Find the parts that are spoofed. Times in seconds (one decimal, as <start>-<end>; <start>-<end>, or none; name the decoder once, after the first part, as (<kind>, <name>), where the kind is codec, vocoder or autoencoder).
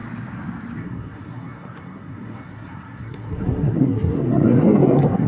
0.8-5.3 (codec, SNAC)